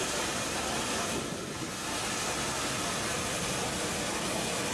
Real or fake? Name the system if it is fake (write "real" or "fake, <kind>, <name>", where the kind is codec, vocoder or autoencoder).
real